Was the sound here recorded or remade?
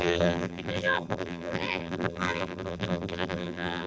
remade